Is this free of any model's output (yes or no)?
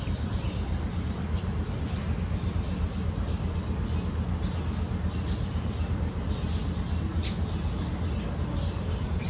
yes